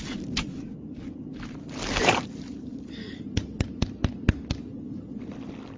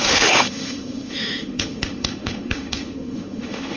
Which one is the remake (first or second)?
second